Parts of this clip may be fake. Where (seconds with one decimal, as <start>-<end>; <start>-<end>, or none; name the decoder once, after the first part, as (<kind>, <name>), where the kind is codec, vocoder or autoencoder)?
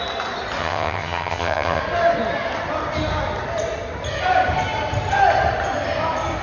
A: 0.6-1.8 (vocoder, HiFi-GAN)